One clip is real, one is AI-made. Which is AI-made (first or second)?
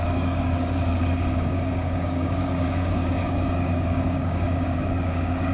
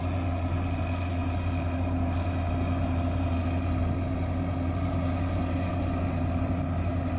first